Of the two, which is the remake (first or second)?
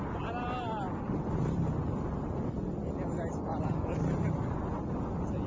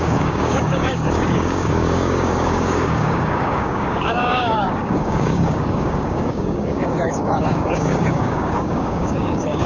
second